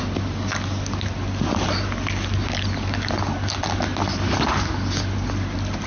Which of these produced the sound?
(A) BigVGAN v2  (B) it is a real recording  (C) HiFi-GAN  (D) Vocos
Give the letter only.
B